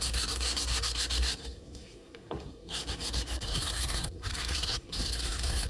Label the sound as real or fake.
fake